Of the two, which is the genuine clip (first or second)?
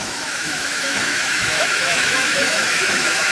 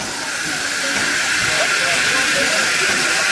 second